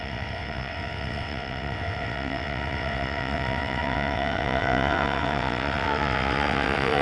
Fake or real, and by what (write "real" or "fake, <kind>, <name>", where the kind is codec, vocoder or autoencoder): fake, vocoder, WaveNeXt